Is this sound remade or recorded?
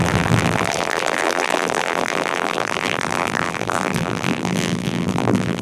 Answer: remade